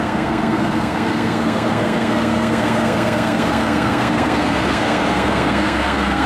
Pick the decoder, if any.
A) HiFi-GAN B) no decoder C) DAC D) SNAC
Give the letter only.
D